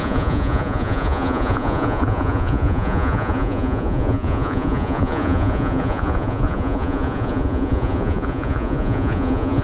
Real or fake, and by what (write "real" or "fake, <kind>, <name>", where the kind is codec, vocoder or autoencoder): fake, vocoder, Vocos